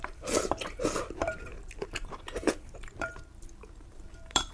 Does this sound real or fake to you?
fake